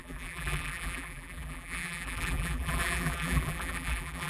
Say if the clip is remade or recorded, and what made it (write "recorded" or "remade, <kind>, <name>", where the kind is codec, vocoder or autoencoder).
remade, vocoder, BigVGAN v2